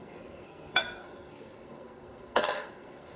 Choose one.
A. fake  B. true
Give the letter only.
A